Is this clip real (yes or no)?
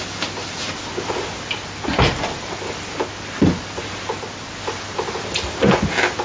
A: yes